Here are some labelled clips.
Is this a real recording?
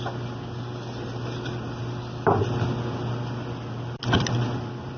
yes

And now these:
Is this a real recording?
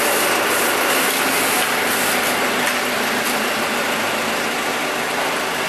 yes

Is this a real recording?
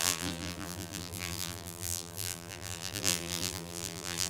no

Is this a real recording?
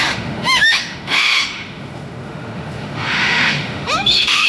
no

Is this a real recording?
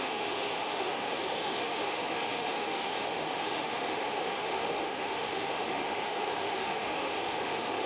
no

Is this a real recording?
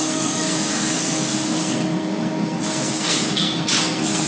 no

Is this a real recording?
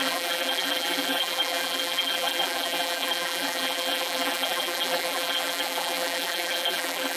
no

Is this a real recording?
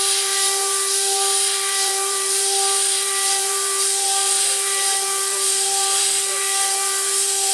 no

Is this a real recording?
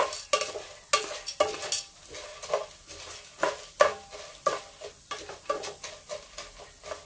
yes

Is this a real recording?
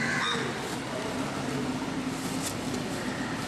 yes